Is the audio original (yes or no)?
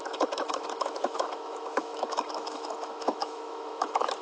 no